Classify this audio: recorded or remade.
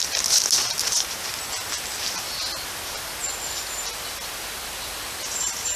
recorded